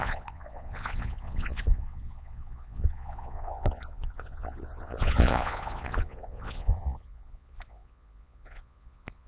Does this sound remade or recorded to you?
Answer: remade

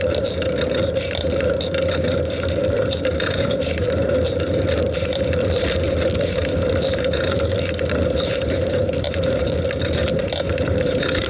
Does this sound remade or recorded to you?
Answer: remade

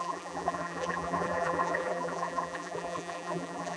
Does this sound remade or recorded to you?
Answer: remade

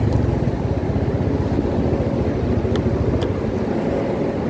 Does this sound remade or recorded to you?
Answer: recorded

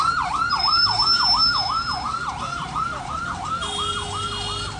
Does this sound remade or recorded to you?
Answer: recorded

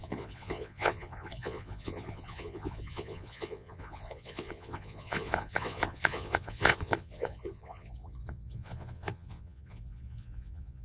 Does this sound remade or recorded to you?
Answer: remade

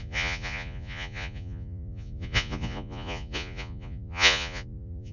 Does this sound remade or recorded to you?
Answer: remade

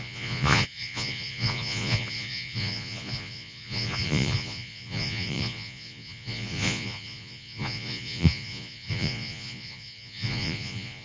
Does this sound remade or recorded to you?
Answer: remade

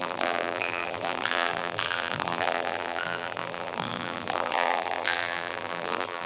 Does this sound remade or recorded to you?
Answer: remade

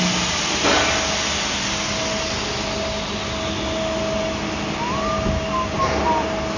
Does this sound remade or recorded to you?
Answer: recorded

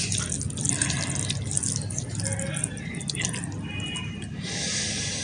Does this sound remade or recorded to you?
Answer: recorded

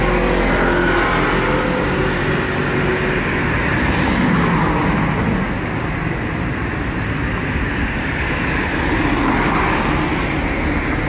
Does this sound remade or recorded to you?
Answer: recorded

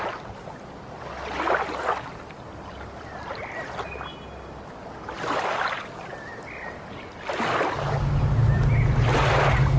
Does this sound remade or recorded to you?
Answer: recorded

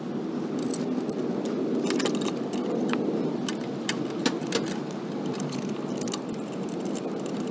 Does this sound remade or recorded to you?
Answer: recorded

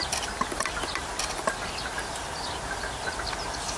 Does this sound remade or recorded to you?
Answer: recorded